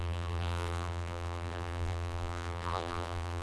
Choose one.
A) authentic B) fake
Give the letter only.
B